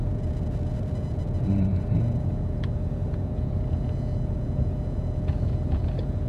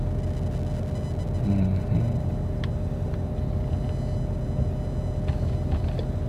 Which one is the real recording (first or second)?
second